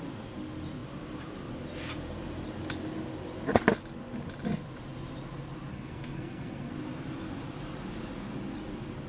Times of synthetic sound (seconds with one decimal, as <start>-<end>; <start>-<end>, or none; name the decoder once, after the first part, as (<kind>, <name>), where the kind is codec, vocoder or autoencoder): 5.7-6.7 (codec, SNAC)